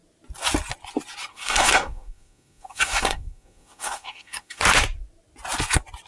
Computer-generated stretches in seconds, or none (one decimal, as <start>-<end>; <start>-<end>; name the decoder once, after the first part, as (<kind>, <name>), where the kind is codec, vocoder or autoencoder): 1.3-4.6 (codec, SNAC)